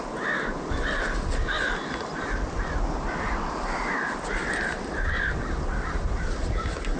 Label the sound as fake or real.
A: real